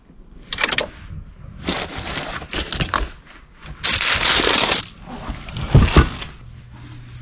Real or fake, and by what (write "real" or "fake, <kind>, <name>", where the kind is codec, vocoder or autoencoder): real